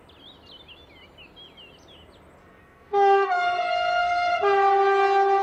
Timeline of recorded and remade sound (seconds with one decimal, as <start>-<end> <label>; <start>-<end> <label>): 0.0-2.4 recorded; 2.4-4.3 remade; 4.3-5.4 recorded